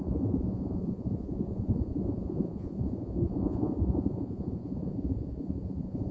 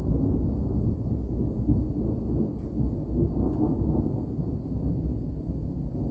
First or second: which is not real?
first